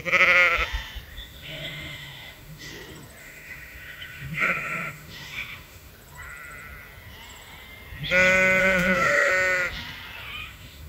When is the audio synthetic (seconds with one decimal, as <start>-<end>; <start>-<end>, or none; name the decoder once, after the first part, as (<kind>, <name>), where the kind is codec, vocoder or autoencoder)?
1.1-2.7 (autoencoder, DAC-VAE); 3.2-5.9; 8.6-9.3; 10.4-10.9